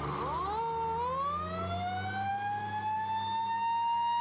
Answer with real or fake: real